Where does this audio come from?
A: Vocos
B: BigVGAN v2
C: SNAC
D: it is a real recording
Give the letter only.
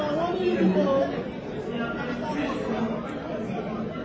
D